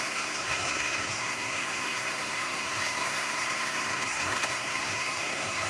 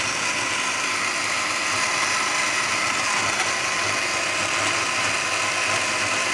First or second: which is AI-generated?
first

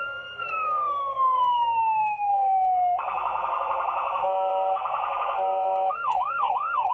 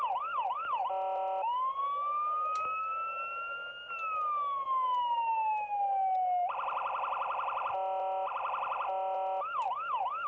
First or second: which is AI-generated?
first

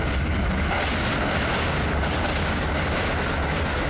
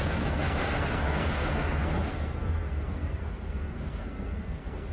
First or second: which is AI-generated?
second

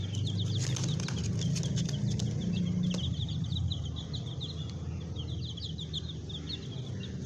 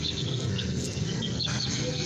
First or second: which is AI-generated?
second